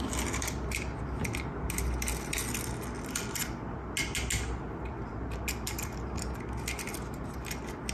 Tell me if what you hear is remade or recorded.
recorded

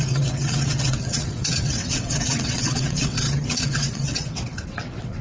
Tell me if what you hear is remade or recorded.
remade